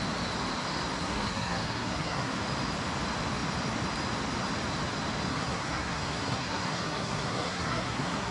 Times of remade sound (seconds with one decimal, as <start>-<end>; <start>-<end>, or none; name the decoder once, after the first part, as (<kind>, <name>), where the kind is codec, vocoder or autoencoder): 1.0-2.3 (codec, SNAC); 5.3-8.3